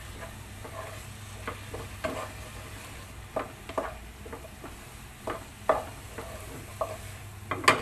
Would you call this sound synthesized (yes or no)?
no